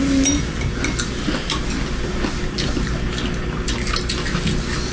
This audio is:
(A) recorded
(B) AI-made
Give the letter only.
A